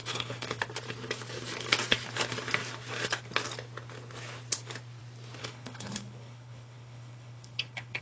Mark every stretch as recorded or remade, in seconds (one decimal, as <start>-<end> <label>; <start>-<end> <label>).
0.0-0.6 remade; 0.6-5.4 recorded; 5.4-8.0 remade